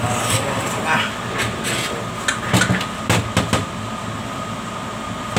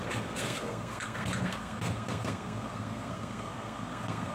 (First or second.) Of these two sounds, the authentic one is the first